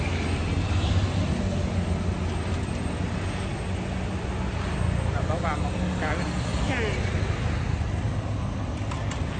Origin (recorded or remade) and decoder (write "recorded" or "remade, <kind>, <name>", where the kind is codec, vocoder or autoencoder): recorded